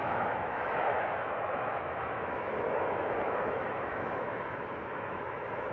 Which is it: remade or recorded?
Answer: remade